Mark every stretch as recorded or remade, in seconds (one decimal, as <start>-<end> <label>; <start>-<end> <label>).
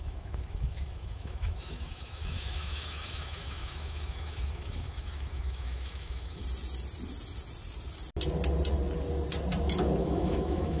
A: 0.0-6.4 remade; 6.4-10.0 recorded; 10.0-10.8 remade